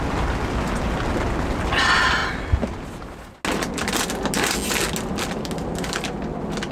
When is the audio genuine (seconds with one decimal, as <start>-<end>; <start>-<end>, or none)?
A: 0.0-6.7